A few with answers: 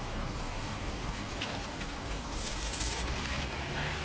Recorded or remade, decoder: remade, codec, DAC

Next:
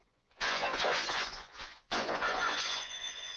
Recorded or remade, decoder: remade, vocoder, Vocos